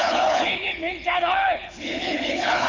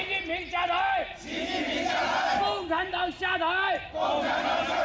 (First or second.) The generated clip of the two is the first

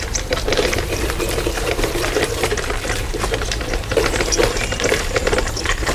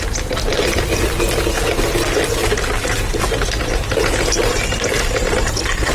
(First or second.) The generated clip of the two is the first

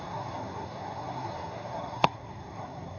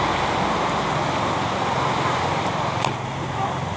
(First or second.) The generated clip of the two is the first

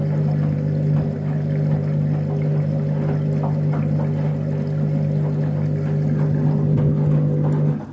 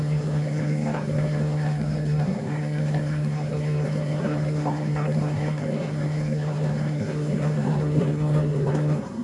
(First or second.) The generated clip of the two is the second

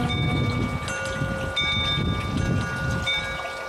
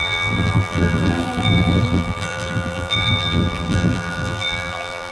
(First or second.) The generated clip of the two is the second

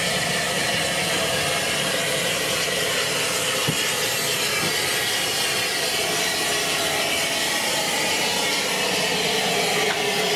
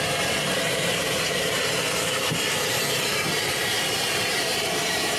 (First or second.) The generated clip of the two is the second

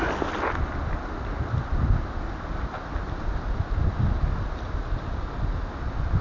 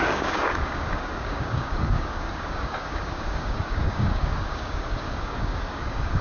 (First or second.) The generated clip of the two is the second